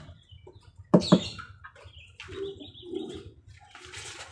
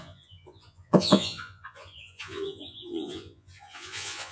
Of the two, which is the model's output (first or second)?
second